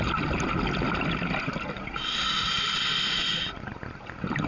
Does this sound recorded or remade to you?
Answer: recorded